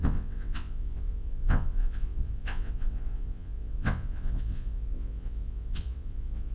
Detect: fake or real fake